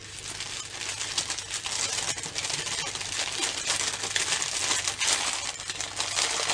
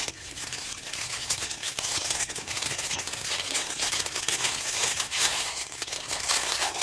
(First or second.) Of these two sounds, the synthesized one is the second